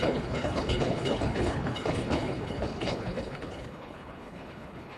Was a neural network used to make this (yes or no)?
yes